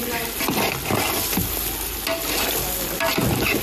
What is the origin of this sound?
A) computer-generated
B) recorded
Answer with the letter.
B